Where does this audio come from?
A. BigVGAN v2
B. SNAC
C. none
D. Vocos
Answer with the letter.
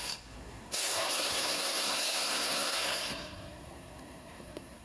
B